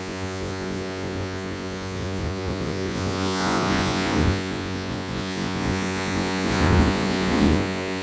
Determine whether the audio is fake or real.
fake